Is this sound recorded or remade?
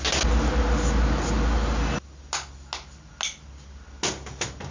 recorded